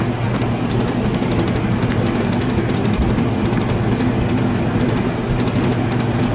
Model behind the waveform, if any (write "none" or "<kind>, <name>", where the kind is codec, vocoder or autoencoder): none